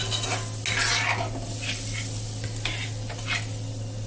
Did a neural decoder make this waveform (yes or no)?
no